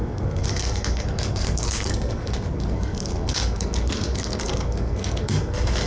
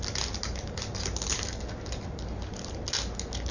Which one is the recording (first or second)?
second